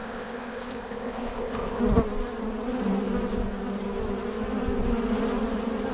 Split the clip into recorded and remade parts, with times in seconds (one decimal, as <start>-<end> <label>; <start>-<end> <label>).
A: 0.0-1.8 remade; 1.8-5.9 recorded